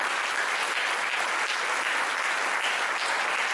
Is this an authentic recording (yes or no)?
yes